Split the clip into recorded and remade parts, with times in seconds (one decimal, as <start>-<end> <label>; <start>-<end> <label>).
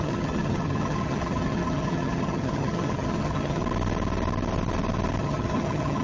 0.0-3.6 remade; 3.6-5.2 recorded; 5.2-6.0 remade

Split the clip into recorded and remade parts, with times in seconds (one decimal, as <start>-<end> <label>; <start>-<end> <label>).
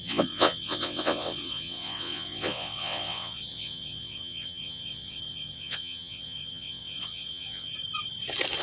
0.0-7.7 remade; 7.7-8.6 recorded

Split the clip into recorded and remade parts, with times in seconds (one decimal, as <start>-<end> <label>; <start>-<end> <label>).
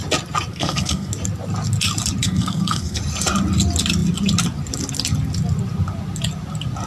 0.0-0.5 recorded; 0.5-1.1 remade; 1.1-2.2 recorded; 2.2-3.0 remade; 3.0-6.9 recorded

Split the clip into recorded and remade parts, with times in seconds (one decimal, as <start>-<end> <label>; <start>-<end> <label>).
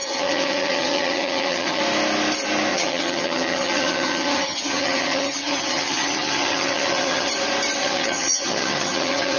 0.0-1.8 remade; 1.8-2.7 recorded; 2.7-7.3 remade; 7.3-7.8 recorded; 7.8-9.4 remade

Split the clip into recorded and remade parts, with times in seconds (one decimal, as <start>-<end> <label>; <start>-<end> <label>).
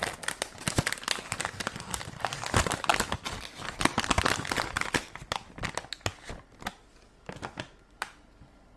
0.0-8.8 recorded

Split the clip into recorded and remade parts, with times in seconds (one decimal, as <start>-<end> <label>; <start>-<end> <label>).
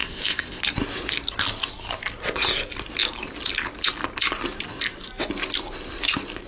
0.0-0.6 remade; 0.6-6.5 recorded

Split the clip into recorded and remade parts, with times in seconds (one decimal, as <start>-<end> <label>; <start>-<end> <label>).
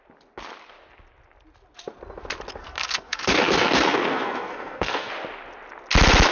0.0-2.6 recorded; 2.6-5.1 remade; 5.1-6.3 recorded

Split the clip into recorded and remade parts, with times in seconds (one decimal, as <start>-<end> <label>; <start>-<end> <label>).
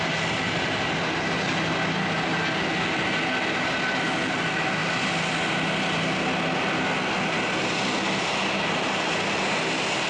0.0-10.1 recorded